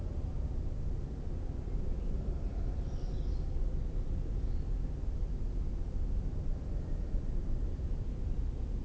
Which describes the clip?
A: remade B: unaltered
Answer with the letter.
B